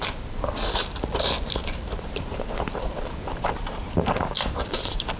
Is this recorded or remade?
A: remade